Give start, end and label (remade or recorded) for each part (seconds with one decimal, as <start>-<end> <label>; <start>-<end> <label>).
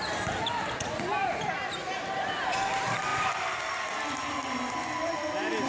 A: 0.0-5.7 recorded